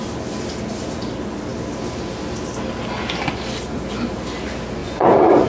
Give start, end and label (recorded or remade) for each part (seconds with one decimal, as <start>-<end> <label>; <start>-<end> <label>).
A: 0.0-4.8 recorded; 4.8-5.5 remade